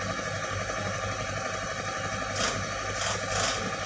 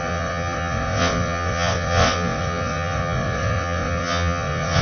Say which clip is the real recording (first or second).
first